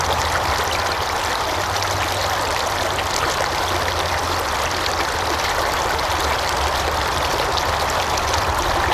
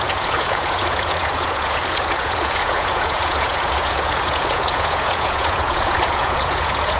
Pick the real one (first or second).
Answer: first